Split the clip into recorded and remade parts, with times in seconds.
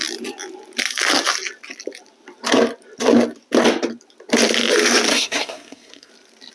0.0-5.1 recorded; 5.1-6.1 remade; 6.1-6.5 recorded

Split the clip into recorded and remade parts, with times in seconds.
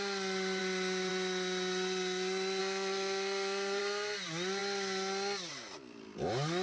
0.0-2.6 recorded; 2.6-3.8 remade; 3.8-6.6 recorded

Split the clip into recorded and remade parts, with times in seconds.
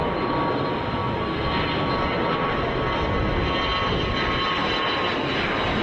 0.0-5.8 recorded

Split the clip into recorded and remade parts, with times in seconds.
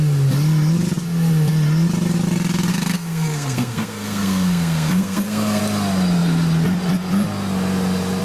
0.0-2.7 recorded; 2.7-5.6 remade; 5.6-8.2 recorded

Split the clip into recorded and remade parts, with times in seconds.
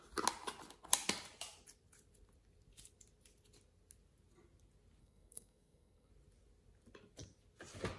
0.0-5.0 recorded; 5.0-6.1 remade; 6.1-8.0 recorded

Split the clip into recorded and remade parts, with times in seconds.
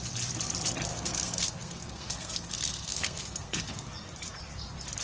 0.0-0.9 recorded; 0.9-3.9 remade; 3.9-5.0 recorded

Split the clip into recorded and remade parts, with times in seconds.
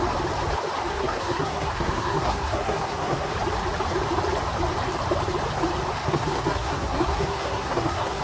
0.0-0.9 recorded; 0.9-3.3 remade; 3.3-6.0 recorded; 6.0-8.2 remade